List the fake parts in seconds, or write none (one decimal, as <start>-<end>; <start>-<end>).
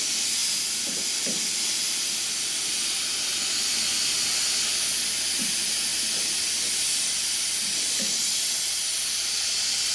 none